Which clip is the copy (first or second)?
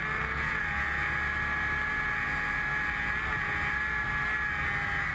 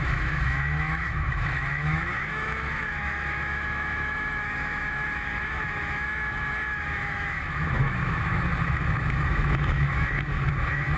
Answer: second